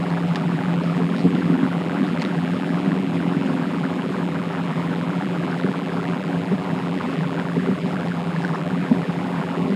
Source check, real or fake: fake